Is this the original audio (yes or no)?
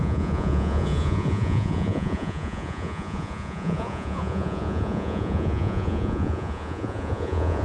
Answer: no